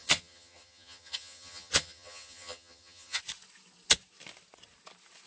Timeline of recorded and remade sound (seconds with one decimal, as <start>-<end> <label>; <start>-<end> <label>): 0.0-3.2 remade; 3.2-5.3 recorded